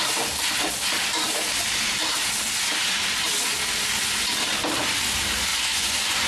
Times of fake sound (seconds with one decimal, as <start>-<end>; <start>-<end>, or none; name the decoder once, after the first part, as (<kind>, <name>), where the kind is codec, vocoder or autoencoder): 5.5-6.3 (vocoder, Vocos)